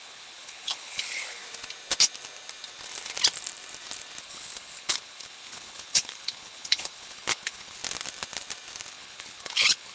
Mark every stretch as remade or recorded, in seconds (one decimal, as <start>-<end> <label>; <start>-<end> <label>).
0.0-1.4 remade; 1.4-4.2 recorded; 4.2-7.8 remade; 7.8-8.9 recorded; 8.9-9.9 remade